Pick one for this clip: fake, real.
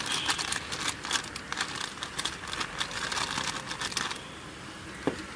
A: real